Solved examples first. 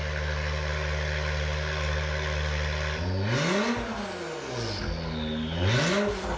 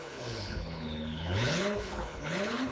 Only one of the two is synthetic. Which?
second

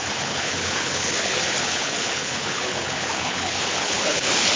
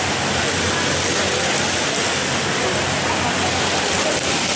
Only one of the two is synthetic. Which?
first